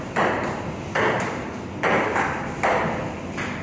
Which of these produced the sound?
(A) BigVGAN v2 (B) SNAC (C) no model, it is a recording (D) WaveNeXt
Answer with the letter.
C